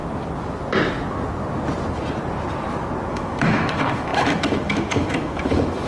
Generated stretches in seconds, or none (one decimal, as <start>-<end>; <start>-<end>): 3.1-5.9